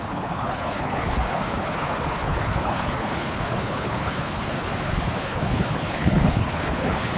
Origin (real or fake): fake